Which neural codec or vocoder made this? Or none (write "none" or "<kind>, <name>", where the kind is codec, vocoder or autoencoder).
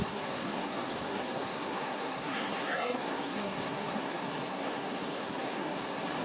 codec, SNAC